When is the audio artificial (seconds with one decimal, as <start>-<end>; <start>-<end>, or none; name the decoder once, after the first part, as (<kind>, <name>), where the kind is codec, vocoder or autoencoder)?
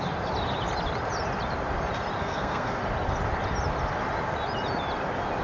2.2-2.8 (codec, SNAC)